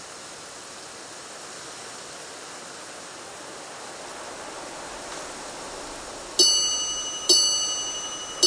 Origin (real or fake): real